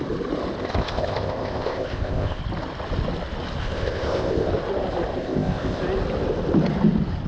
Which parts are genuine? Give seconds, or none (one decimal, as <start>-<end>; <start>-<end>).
0.0-0.6; 2.4-3.6; 4.5-5.2; 5.8-7.3